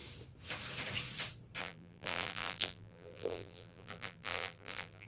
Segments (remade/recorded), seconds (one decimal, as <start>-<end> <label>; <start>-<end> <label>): 0.0-1.6 recorded; 1.6-5.1 remade